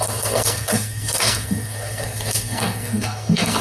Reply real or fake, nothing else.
fake